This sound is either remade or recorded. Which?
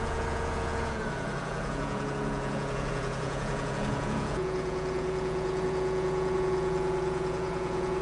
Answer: remade